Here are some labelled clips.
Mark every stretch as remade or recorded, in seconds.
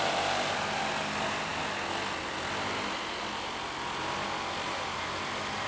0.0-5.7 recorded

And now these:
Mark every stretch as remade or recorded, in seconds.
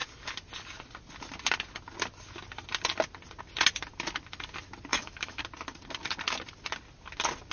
0.0-4.9 recorded; 4.9-5.4 remade; 5.4-7.5 recorded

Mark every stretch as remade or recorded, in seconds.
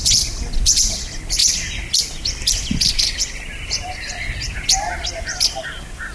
0.0-6.1 remade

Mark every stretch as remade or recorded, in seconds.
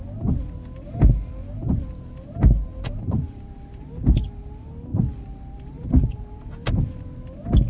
0.0-1.6 recorded; 1.6-3.8 remade; 3.8-4.9 recorded; 4.9-6.5 remade; 6.5-7.7 recorded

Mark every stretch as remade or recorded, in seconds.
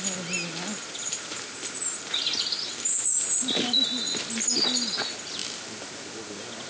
0.0-0.8 recorded; 0.8-1.8 remade; 1.8-5.4 recorded; 5.4-6.1 remade; 6.1-6.7 recorded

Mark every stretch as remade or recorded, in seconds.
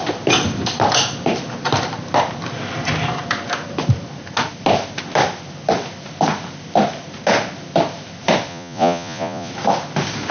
0.0-8.5 recorded; 8.5-9.5 remade; 9.5-10.3 recorded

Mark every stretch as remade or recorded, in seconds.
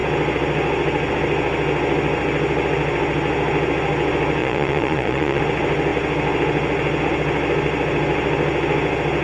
0.0-4.4 recorded; 4.4-5.4 remade; 5.4-9.2 recorded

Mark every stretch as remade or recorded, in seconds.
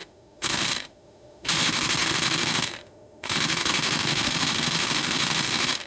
0.0-5.9 remade